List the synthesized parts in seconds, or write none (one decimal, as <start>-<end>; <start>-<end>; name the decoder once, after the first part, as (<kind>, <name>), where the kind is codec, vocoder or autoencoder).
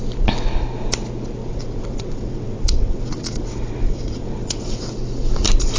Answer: 1.4-4.9 (vocoder, WaveNeXt)